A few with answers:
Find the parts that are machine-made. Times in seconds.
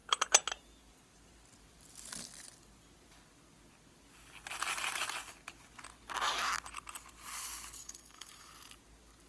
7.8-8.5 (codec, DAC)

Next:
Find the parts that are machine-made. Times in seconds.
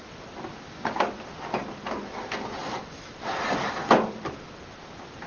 0.5-1.0 (codec, DAC)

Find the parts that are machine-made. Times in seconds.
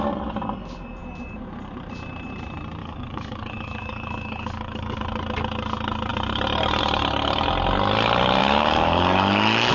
2.8-5.0 (codec, DAC); 8.4-9.7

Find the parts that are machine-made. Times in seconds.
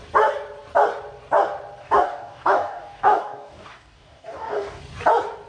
1.8-4.8 (codec, DAC)